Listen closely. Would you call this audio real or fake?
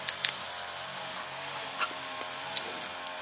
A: real